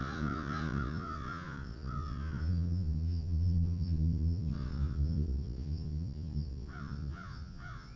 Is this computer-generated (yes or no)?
yes